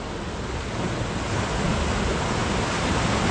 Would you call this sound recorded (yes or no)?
yes